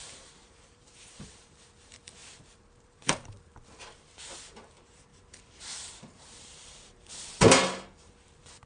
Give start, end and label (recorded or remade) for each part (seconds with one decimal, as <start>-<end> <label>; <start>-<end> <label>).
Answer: 0.0-8.7 remade